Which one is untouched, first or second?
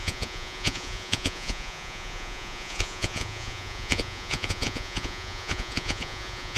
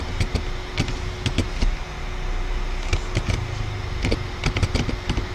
second